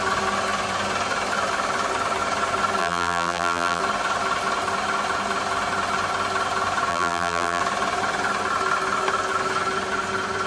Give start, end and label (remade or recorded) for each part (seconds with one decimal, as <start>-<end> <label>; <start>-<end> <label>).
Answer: 0.0-2.8 recorded; 2.8-3.8 remade; 3.8-6.9 recorded; 6.9-7.6 remade; 7.6-10.5 recorded